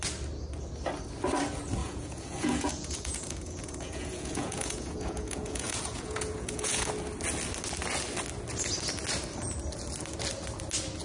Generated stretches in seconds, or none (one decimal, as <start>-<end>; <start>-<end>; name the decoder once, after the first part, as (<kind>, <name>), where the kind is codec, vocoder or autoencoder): 1.8-6.9 (vocoder, Vocos)